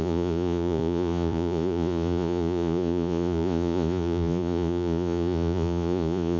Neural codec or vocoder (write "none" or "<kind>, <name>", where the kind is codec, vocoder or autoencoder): vocoder, Vocos